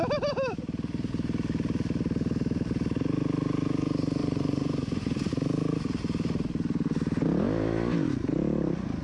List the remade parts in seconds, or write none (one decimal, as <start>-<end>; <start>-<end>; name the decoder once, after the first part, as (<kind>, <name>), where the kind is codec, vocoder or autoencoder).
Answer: 4.2-5.3 (vocoder, Vocos)

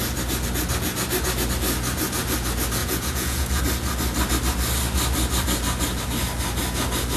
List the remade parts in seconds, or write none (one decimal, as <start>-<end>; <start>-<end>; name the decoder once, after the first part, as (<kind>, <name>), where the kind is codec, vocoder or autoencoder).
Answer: 2.8-3.6 (vocoder, Vocos)